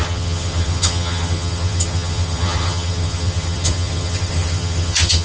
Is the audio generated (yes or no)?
yes